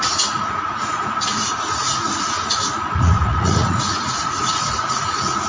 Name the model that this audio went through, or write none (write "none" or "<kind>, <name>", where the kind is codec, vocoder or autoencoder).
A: vocoder, Vocos